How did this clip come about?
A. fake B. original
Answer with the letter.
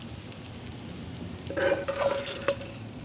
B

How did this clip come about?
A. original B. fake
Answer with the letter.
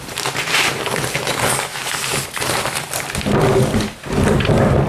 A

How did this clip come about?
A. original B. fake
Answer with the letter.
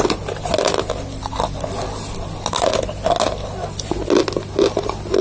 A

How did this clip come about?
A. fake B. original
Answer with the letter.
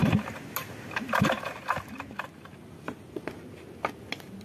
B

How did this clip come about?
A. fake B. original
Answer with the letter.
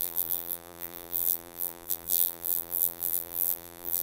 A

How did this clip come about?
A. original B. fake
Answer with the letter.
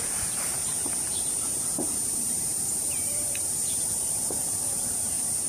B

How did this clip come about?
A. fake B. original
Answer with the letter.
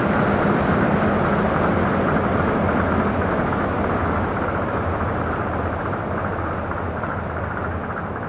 B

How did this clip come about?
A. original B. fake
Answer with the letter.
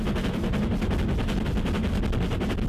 A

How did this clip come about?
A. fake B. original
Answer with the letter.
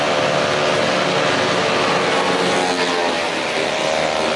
B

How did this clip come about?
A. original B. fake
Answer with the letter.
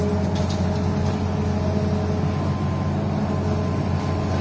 A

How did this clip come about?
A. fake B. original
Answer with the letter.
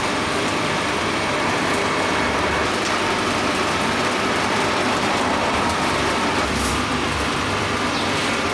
A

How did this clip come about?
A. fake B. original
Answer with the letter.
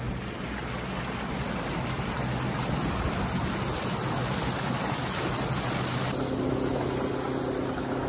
B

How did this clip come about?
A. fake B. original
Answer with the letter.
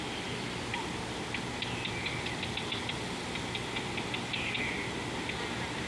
B